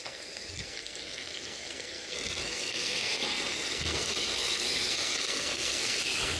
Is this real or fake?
fake